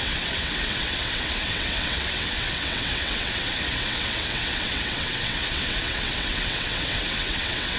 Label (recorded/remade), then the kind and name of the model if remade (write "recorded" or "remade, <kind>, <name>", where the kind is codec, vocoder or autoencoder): remade, vocoder, WaveNeXt